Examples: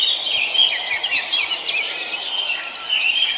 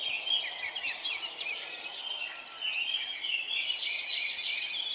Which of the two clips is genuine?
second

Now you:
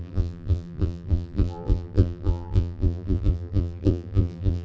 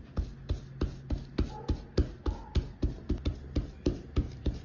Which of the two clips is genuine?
second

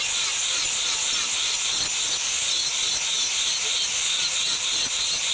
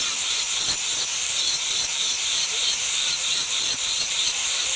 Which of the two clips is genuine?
first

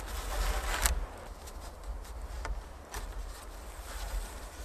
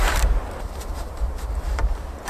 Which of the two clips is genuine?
first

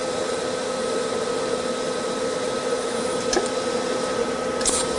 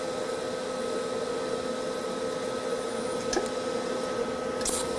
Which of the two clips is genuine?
second